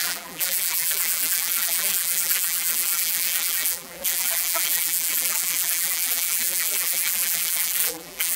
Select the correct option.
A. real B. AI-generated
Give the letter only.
B